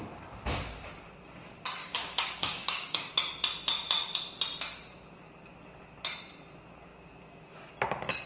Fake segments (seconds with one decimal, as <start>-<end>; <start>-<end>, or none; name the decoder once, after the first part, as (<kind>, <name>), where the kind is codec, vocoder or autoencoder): 1.8-3.1 (codec, DAC); 6.9-7.7